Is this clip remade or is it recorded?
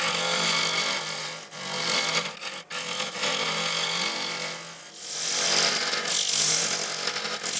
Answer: recorded